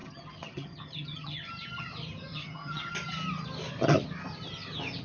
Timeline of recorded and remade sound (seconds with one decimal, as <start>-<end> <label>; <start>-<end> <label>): 0.0-1.5 remade; 1.5-2.3 recorded; 2.3-2.9 remade; 2.9-5.0 recorded